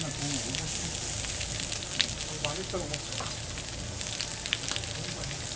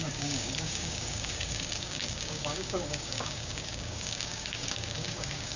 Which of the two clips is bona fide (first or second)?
first